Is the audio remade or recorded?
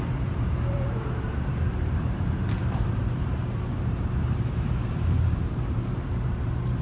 remade